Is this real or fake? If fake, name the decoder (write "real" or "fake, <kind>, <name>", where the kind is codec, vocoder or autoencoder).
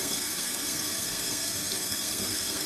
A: fake, codec, SNAC